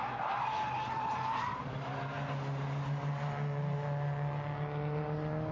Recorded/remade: recorded